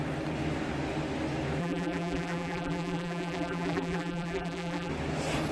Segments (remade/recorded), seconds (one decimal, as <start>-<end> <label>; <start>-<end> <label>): 0.0-1.6 recorded; 1.6-4.9 remade; 4.9-5.5 recorded